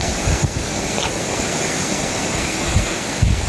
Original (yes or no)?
no